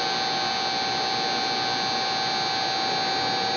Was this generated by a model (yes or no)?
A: no